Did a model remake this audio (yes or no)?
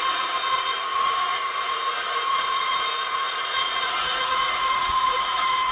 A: yes